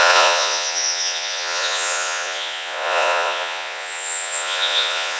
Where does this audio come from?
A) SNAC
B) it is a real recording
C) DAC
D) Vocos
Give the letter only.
D